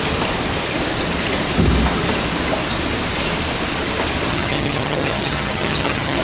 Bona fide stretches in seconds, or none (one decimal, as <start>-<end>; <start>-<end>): 0.0-4.3